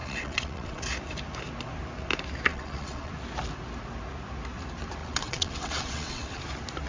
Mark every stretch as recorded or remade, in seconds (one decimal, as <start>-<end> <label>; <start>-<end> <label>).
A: 0.0-0.8 remade; 0.8-2.5 recorded; 2.5-3.1 remade; 3.1-5.0 recorded; 5.0-6.4 remade; 6.4-6.9 recorded